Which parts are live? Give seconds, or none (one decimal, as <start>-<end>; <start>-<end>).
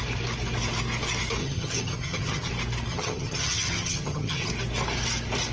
0.0-1.4; 2.5-2.9; 4.5-5.5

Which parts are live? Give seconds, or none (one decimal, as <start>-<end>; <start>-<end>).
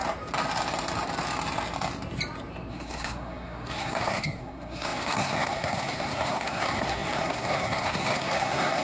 0.0-2.7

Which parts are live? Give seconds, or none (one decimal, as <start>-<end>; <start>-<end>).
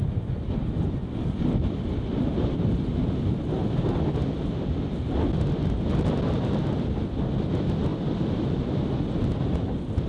0.0-10.1